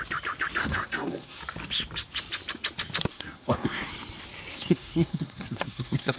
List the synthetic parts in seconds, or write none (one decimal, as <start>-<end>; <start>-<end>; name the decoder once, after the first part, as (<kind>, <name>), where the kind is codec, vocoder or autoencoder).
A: 0.6-1.4 (codec, SNAC); 3.1-3.9; 4.5-6.2